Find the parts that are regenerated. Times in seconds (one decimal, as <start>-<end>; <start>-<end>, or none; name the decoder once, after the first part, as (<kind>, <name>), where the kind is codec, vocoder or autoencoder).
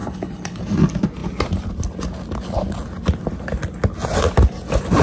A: 0.0-0.6 (codec, HILCodec)